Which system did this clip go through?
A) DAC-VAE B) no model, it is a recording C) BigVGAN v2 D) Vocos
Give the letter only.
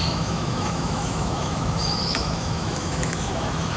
A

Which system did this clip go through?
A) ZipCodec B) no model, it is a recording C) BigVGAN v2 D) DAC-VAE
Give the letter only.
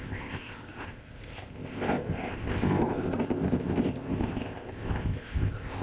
A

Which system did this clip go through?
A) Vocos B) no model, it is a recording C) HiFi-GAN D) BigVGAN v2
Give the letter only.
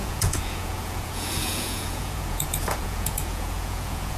A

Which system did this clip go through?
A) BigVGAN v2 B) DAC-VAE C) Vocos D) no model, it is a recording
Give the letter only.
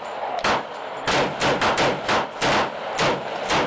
D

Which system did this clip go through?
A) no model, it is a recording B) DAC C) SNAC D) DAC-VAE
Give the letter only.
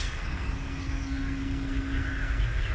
C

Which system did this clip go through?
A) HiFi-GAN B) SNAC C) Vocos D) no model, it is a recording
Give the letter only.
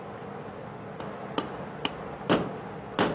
D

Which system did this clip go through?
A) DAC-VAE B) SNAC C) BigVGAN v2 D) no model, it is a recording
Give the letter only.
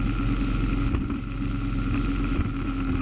D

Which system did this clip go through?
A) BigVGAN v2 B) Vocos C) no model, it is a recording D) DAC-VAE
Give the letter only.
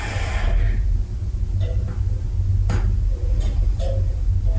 C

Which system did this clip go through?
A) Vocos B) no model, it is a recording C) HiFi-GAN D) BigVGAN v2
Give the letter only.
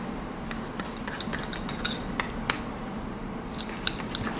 B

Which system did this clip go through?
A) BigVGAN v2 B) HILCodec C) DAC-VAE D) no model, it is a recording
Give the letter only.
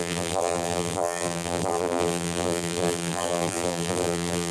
A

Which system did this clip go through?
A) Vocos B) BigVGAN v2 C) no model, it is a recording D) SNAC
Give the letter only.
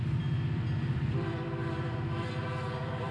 B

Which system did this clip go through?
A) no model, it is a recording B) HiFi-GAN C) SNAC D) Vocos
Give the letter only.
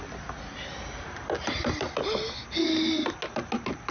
A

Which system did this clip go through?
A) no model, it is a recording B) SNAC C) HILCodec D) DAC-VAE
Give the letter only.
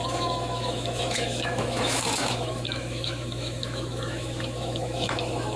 D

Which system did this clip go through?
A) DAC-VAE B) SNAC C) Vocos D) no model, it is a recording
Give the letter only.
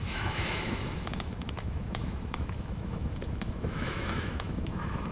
A